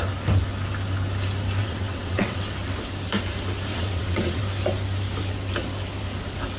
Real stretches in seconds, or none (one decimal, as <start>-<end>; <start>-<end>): 0.0-1.6; 2.5-3.7; 4.4-6.6